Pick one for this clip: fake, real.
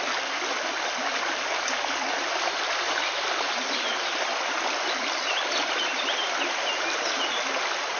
real